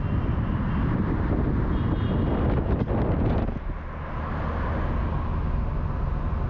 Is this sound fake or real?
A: real